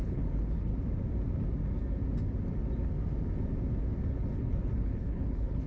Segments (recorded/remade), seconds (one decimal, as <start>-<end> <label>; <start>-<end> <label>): 0.0-0.7 remade; 0.7-4.1 recorded; 4.1-5.7 remade